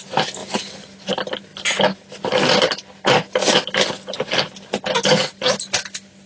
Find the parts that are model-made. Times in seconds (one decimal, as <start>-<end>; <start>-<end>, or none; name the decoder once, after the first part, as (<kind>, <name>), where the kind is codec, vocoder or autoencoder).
none